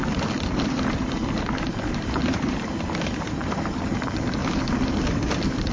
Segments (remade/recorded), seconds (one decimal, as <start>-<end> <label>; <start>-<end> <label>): 0.0-3.4 remade; 3.4-4.4 recorded; 4.4-5.3 remade; 5.3-5.7 recorded